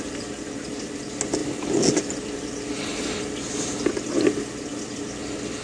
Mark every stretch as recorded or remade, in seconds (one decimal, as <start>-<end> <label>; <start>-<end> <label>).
0.0-5.6 recorded

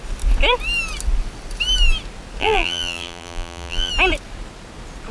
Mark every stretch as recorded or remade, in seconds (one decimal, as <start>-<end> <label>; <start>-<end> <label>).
0.0-2.4 recorded; 2.4-3.9 remade; 3.9-5.1 recorded

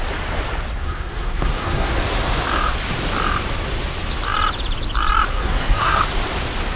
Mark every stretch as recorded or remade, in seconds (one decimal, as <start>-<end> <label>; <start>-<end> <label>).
0.0-0.8 recorded; 0.8-1.9 remade; 1.9-5.3 recorded; 5.3-6.0 remade; 6.0-6.8 recorded

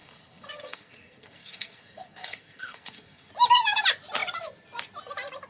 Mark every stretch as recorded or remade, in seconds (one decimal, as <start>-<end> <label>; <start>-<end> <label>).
0.0-3.3 remade; 3.3-5.5 recorded

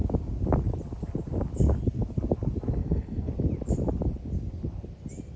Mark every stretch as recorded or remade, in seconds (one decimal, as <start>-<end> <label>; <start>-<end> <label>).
0.0-2.8 recorded; 2.8-3.3 remade; 3.3-5.4 recorded

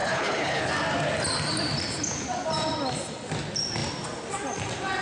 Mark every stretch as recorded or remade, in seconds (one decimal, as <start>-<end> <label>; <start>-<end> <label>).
0.0-0.7 remade; 0.7-5.0 recorded

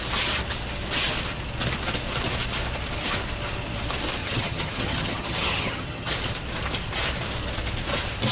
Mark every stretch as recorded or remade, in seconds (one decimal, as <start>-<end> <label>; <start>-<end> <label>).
0.0-4.2 recorded; 4.2-6.1 remade; 6.1-8.3 recorded